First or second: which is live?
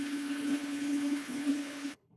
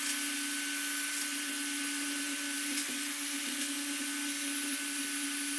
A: second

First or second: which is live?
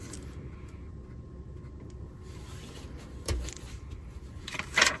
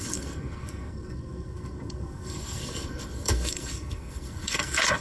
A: first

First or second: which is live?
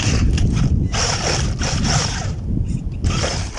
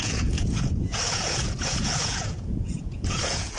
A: first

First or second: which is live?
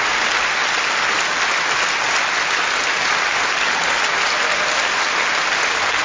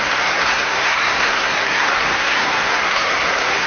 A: first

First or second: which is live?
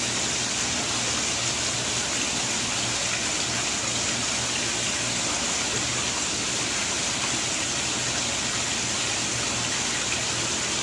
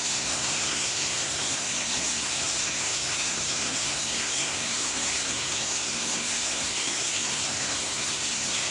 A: first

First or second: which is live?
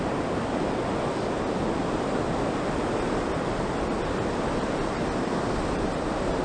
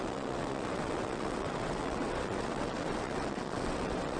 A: first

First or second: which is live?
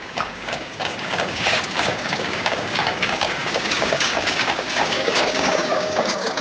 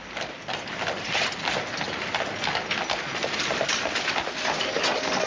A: second